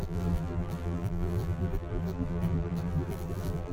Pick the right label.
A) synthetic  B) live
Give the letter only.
A